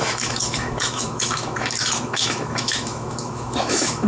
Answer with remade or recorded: remade